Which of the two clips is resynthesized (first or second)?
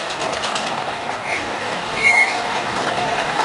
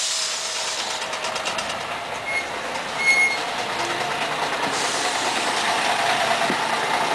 first